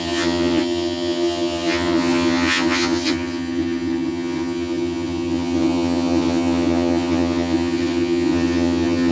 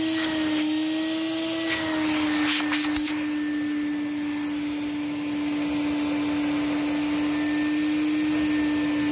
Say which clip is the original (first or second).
second